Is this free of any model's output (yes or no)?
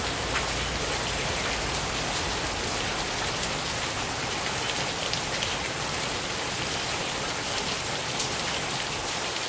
yes